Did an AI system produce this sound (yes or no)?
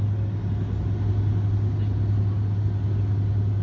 no